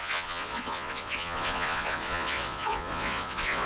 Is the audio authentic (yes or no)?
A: no